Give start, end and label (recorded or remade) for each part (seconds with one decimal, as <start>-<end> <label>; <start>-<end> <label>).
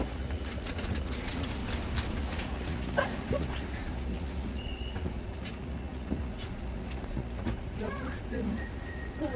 0.0-1.6 remade; 1.6-2.2 recorded; 2.2-9.4 remade